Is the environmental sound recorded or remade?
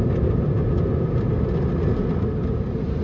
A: recorded